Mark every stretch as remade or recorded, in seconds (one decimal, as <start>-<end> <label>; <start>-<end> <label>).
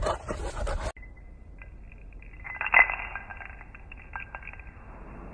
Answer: 0.0-5.3 recorded